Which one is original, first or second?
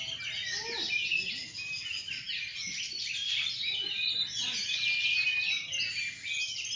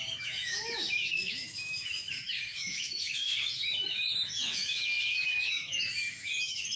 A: first